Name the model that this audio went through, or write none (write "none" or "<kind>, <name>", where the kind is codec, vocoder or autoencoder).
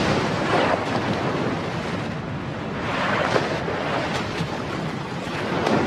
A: none